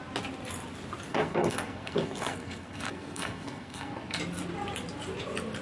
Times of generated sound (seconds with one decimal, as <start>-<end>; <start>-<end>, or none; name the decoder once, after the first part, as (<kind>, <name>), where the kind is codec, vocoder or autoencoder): 1.1-4.2 (codec, SNAC)